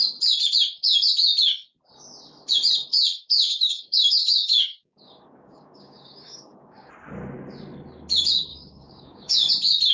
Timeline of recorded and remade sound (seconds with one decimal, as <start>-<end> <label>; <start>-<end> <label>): 0.0-3.5 recorded; 3.5-6.9 remade; 6.9-8.5 recorded; 8.5-9.5 remade; 9.5-9.9 recorded